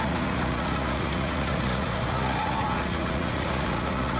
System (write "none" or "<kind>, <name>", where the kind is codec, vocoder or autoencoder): vocoder, Vocos